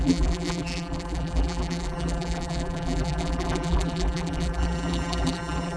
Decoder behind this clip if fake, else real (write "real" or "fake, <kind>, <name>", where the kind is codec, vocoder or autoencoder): fake, vocoder, BigVGAN v2